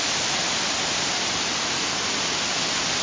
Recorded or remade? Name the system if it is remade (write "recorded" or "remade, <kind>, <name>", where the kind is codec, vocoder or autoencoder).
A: recorded